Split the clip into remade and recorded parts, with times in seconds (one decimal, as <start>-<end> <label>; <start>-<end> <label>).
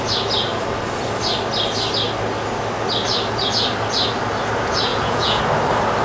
0.0-4.9 recorded; 4.9-5.4 remade; 5.4-6.0 recorded